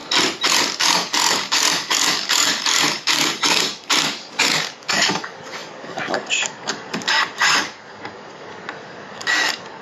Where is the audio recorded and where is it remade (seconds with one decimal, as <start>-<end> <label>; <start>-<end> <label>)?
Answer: 0.0-0.8 recorded; 0.8-9.8 remade

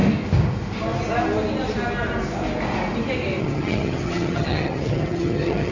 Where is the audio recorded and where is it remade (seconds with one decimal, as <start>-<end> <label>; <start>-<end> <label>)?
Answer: 0.0-3.4 recorded; 3.4-5.7 remade

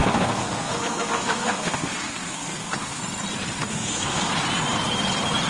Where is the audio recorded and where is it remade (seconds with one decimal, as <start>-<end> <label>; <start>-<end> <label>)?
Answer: 0.0-3.0 remade; 3.0-3.7 recorded; 3.7-4.3 remade; 4.3-5.5 recorded

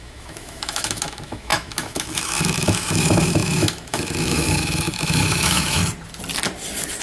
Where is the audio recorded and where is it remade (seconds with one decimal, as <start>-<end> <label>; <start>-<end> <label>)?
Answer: 0.0-5.8 remade; 5.8-7.0 recorded

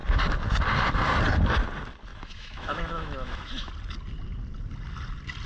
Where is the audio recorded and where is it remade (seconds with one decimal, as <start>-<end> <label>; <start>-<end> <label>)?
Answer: 0.0-2.1 recorded; 2.1-3.7 remade; 3.7-5.5 recorded

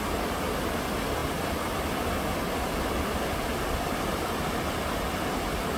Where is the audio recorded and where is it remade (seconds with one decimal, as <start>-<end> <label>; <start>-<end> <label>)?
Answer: 0.0-5.8 recorded

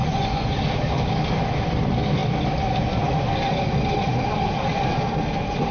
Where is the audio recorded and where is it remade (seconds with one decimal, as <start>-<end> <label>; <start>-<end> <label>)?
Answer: 0.0-0.6 remade; 0.6-5.7 recorded

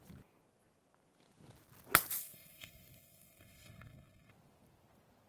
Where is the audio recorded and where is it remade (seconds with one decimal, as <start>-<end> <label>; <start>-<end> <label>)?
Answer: 0.0-2.2 recorded; 2.2-4.3 remade; 4.3-5.3 recorded